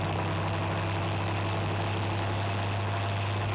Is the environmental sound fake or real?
real